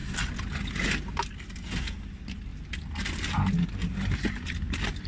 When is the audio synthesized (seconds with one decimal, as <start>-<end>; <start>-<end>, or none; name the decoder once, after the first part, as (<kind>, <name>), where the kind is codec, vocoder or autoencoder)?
none